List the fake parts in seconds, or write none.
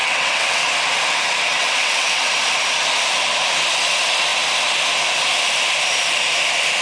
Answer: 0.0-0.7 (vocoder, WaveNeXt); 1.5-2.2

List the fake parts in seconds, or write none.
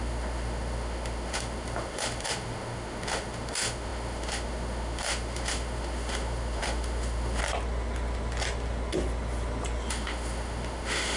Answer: 0.0-7.4 (autoencoder, DAC-VAE); 9.9-11.2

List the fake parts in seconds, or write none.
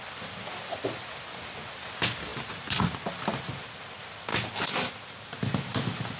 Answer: 2.3-3.1 (vocoder, BigVGAN v2); 4.3-4.9